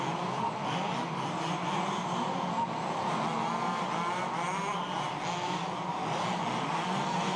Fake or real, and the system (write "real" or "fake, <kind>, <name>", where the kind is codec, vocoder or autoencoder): real